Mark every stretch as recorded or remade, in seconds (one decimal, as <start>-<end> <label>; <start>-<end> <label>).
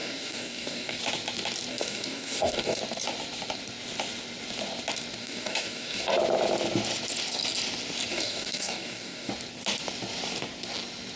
0.0-1.0 remade; 1.0-1.7 recorded; 1.7-2.8 remade; 2.8-5.2 recorded; 5.2-6.1 remade; 6.1-8.1 recorded; 8.1-9.3 remade; 9.3-11.2 recorded